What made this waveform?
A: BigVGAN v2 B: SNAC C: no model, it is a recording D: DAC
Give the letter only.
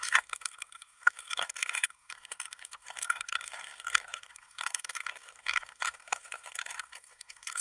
B